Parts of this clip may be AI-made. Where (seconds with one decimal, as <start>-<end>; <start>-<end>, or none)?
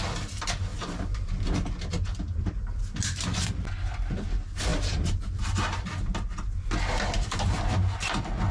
none